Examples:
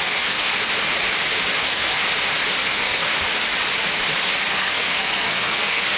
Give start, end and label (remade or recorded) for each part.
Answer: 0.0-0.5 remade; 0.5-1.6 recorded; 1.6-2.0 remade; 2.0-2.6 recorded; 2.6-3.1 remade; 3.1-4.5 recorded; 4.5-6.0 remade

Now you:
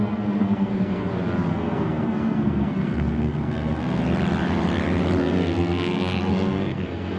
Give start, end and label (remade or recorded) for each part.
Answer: 0.0-1.1 remade; 1.1-1.5 recorded; 1.5-4.0 remade; 4.0-5.2 recorded; 5.2-7.2 remade

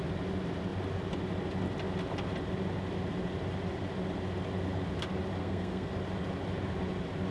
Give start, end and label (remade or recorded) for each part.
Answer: 0.0-5.4 recorded; 5.4-5.9 remade; 5.9-7.3 recorded

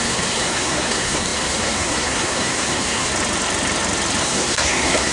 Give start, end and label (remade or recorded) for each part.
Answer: 0.0-3.1 remade; 3.1-4.2 recorded; 4.2-5.1 remade

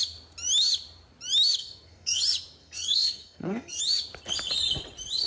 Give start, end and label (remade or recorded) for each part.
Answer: 0.0-1.6 recorded; 1.6-2.2 remade; 2.2-2.6 recorded; 2.6-3.8 remade; 3.8-5.3 recorded

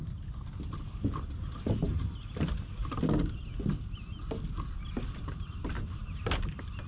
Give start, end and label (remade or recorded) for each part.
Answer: 0.0-6.9 recorded

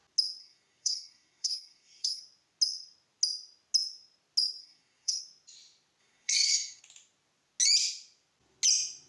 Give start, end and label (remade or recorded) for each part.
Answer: 0.0-0.4 recorded; 0.4-2.2 remade; 2.2-4.6 recorded; 4.6-5.2 remade; 5.2-6.0 recorded; 6.0-6.8 remade; 6.8-9.1 recorded